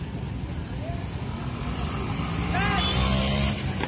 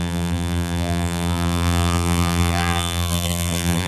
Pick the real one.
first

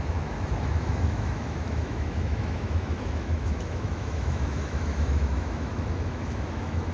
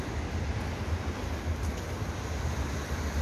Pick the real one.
second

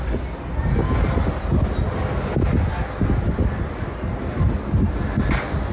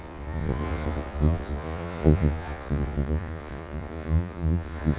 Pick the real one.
first